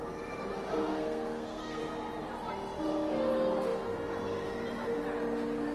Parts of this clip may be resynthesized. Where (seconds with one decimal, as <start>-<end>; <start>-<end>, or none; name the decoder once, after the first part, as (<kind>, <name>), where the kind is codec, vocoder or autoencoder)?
0.9-1.8 (codec, SNAC)